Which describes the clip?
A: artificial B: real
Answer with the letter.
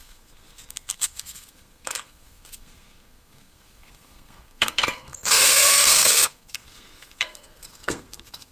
A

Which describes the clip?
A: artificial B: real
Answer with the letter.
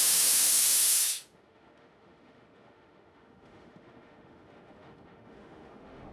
A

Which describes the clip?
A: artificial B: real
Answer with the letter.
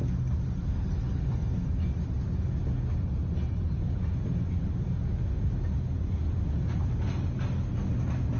B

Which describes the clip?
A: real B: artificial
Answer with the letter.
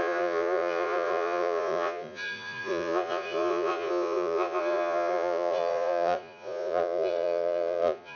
B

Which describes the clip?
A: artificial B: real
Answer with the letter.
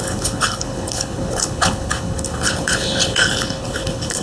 A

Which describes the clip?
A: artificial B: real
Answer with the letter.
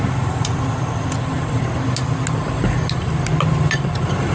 B